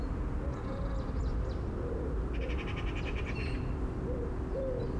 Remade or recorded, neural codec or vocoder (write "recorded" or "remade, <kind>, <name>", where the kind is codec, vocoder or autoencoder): remade, vocoder, BigVGAN v2